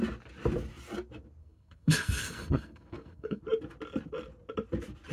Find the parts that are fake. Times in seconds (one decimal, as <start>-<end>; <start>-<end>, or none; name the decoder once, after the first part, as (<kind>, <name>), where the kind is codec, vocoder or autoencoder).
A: 1.4-3.4 (codec, SNAC)